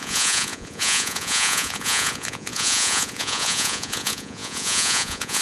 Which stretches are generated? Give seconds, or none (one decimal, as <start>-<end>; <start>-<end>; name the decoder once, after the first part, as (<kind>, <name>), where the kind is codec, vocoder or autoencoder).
0.0-5.4 (vocoder, Vocos)